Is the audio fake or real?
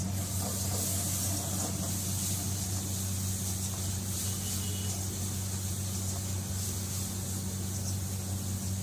real